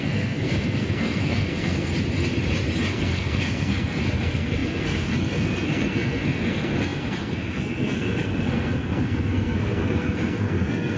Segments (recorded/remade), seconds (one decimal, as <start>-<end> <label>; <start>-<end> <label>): 0.0-1.9 remade; 1.9-2.9 recorded; 2.9-11.0 remade